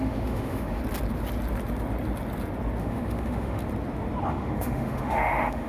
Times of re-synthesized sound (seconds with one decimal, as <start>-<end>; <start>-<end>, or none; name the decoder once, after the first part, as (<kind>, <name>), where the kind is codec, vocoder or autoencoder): 0.0-0.8 (autoencoder, DAC-VAE); 2.8-3.6; 4.3-5.7